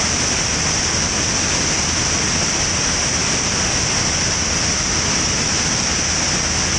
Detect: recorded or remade recorded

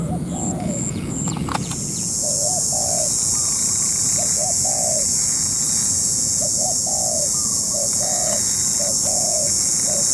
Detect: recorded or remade remade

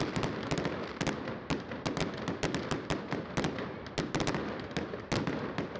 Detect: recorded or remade recorded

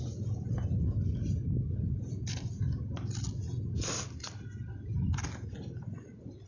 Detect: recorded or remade recorded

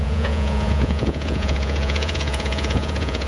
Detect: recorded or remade remade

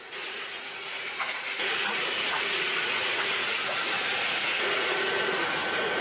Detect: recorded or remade remade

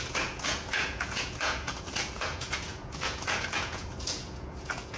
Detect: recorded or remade remade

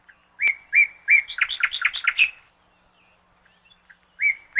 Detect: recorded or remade recorded